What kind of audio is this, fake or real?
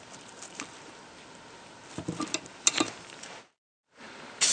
fake